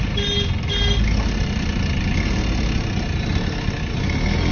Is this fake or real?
real